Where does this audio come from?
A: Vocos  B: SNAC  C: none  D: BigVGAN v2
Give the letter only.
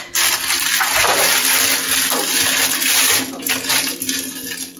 C